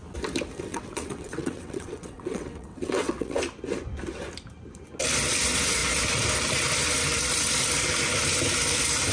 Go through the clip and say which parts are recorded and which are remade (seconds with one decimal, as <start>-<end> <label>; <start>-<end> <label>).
0.0-0.7 recorded; 0.7-3.4 remade; 3.4-9.1 recorded